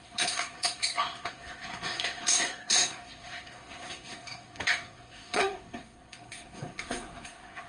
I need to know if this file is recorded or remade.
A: remade